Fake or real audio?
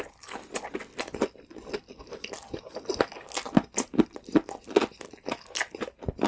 real